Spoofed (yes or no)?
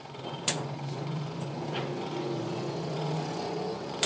yes